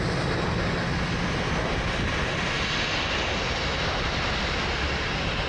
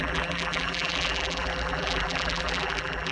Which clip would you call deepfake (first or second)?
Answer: second